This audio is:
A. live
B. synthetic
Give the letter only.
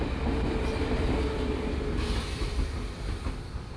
A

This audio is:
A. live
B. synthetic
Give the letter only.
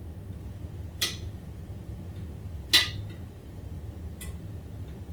A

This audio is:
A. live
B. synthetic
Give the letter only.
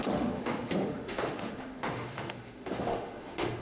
B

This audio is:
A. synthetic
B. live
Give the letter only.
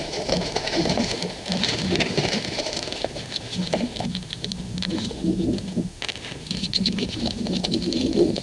A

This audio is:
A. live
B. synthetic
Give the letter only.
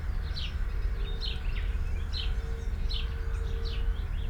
A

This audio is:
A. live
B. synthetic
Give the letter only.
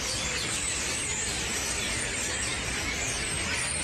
A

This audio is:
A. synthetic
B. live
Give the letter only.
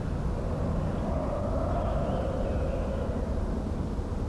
B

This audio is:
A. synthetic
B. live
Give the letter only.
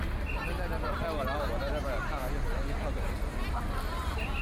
B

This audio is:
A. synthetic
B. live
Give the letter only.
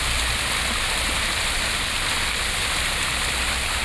B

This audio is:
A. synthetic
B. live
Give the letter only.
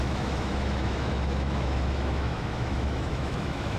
A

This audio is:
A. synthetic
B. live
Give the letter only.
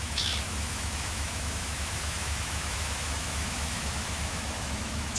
A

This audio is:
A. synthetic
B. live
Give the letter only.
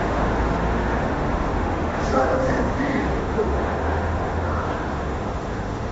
A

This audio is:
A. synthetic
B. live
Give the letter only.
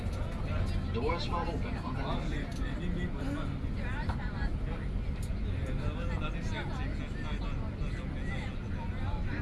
B